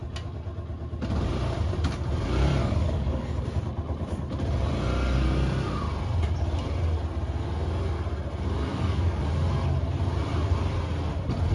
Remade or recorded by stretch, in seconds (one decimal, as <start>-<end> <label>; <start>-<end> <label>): 0.0-2.6 recorded; 2.6-3.4 remade; 3.4-8.7 recorded; 8.7-9.2 remade; 9.2-11.5 recorded